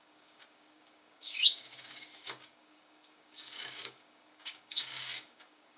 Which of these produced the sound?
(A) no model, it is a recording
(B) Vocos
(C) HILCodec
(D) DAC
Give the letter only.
D